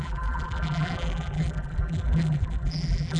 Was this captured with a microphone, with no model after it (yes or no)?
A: no